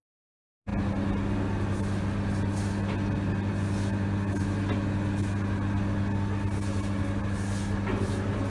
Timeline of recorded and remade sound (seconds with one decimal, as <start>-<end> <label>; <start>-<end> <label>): 0.0-8.5 recorded